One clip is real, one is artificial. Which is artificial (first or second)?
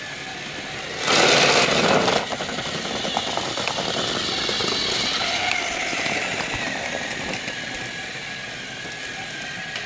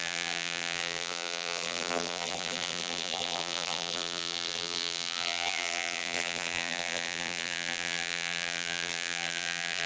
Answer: second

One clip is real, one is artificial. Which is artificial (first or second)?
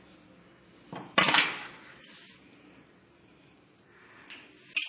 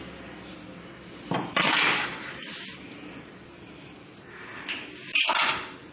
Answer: second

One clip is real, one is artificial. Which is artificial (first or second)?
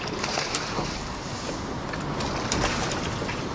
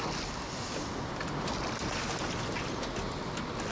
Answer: first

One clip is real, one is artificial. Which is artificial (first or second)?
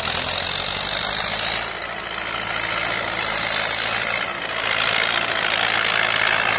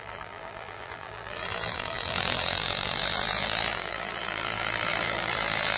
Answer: second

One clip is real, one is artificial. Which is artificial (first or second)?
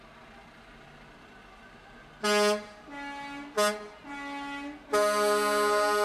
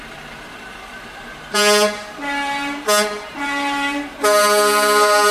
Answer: second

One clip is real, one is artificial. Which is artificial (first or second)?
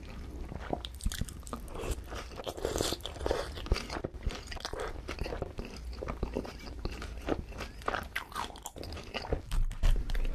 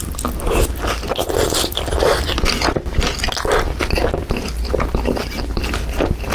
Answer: first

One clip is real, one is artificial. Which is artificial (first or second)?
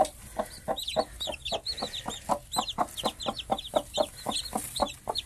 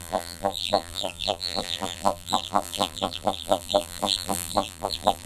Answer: second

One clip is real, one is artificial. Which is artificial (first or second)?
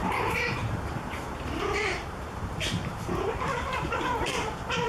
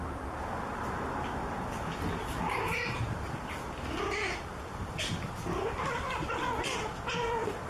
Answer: first